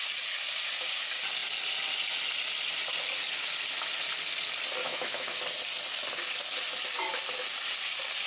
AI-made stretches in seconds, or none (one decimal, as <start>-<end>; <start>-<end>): 4.8-5.4